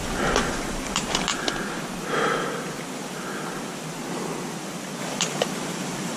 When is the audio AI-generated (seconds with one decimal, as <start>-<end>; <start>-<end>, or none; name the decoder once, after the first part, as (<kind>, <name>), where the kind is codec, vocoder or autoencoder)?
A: 0.0-1.3 (vocoder, BigVGAN v2); 5.0-6.2